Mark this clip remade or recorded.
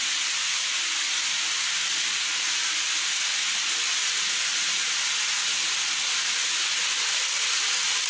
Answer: recorded